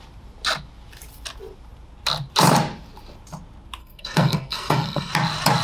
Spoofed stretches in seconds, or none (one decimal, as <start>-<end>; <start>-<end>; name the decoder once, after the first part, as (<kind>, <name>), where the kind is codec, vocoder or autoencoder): 3.8-5.1 (codec, SNAC)